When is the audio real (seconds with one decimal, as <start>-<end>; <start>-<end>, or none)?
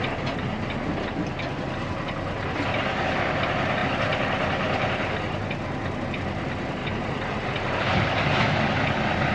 0.0-6.8; 7.8-9.3